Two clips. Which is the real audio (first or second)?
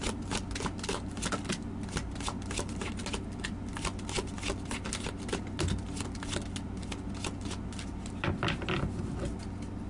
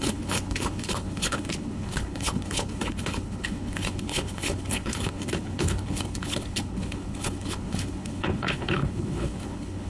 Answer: first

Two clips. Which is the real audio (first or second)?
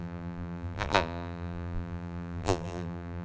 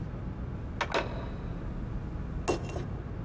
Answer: second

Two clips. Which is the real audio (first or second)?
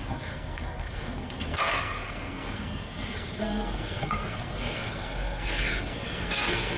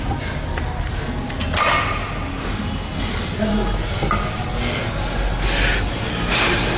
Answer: second